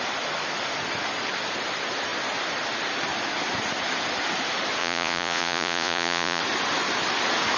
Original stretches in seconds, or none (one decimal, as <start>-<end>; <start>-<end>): 0.0-4.8; 6.4-7.6